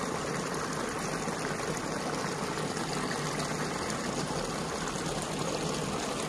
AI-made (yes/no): no